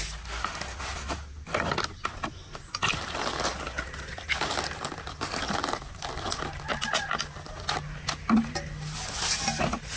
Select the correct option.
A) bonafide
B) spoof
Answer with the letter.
A